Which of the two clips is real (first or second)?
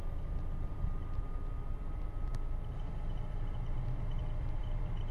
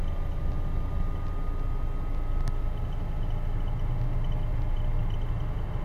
second